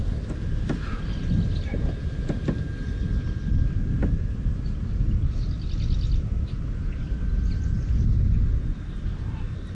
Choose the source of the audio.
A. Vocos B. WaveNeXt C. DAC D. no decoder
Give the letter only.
D